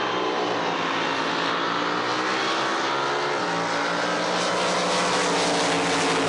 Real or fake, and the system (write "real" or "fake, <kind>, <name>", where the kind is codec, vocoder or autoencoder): real